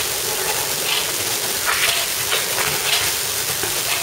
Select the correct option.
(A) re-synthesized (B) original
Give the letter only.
B